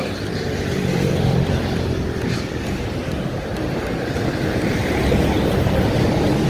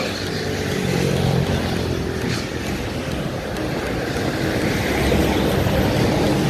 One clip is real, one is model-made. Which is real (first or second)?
second